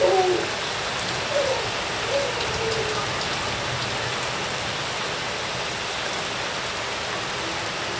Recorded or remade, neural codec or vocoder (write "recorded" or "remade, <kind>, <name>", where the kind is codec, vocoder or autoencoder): recorded